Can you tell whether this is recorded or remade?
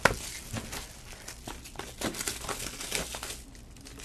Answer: recorded